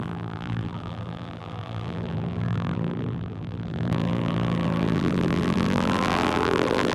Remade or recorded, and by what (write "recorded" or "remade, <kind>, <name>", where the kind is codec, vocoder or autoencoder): remade, vocoder, BigVGAN v2